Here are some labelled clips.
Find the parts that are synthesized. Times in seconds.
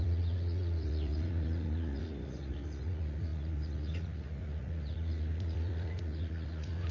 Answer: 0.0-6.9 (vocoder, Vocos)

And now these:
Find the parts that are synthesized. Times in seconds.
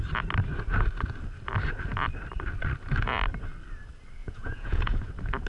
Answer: 4.2-5.1 (vocoder, Vocos)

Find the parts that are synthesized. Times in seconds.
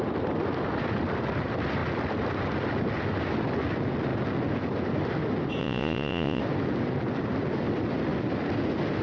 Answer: 5.6-6.4 (vocoder, Vocos)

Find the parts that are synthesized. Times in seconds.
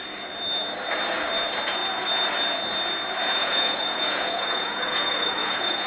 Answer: 3.4-5.9 (vocoder, Vocos)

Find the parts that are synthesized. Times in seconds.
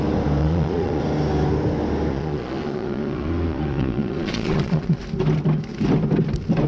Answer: 0.4-1.0 (vocoder, Vocos); 2.1-5.0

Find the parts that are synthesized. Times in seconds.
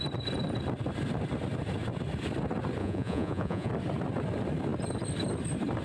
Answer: 2.8-3.7 (vocoder, Vocos)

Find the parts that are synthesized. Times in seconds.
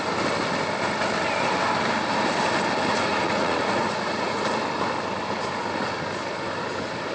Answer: 2.9-4.4 (vocoder, Vocos)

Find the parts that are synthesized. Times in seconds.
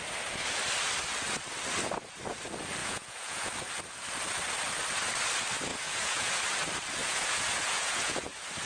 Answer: 2.8-3.5 (vocoder, Vocos); 5.7-6.4; 7.0-8.1